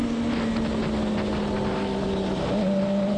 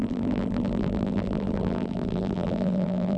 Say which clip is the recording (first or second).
first